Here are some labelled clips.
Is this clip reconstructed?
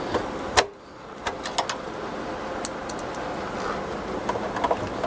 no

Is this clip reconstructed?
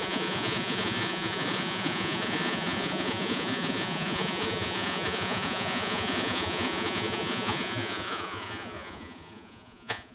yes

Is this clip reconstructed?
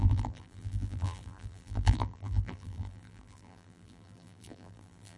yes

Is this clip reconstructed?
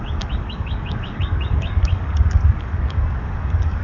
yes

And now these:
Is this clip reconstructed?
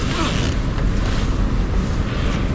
no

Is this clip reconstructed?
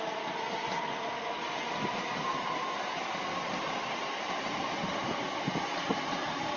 no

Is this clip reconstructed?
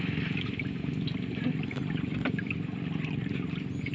no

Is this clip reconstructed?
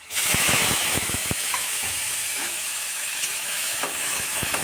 yes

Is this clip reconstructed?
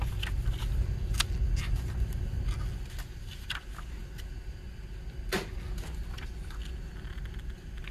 no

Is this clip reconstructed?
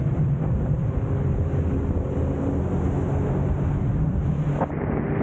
no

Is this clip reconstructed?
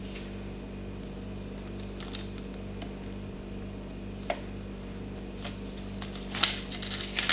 no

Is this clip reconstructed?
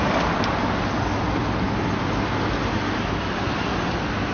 no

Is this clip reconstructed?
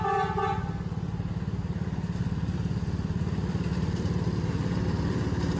no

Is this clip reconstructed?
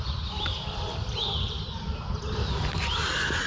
yes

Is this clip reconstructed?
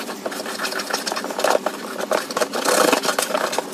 no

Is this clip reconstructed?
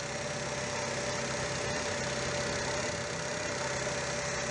no